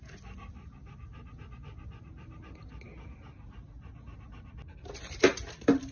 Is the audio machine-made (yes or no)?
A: no